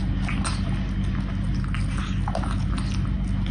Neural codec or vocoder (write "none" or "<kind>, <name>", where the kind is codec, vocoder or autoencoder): none